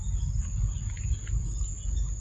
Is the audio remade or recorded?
recorded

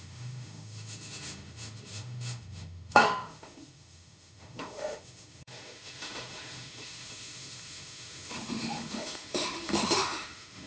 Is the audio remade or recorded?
remade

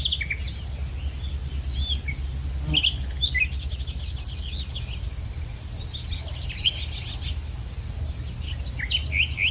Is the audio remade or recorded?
recorded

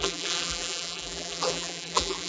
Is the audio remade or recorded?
remade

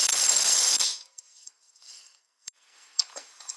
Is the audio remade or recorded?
remade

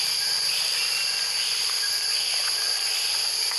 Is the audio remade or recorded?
recorded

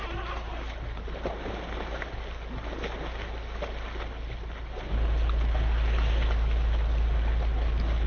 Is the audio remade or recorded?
recorded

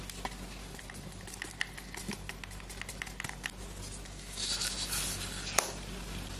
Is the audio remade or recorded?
recorded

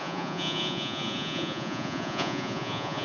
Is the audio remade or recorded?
remade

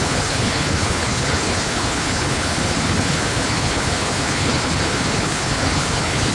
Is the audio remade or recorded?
remade